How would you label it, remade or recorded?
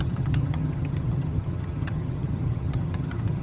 remade